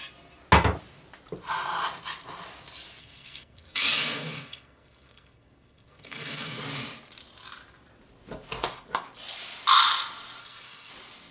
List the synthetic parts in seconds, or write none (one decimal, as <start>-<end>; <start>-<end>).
3.0-6.6; 10.4-10.9